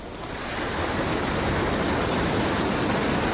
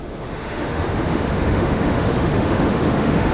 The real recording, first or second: first